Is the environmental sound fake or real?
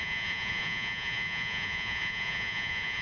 fake